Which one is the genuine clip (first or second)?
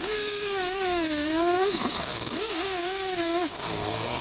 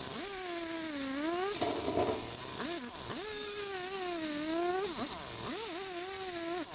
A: second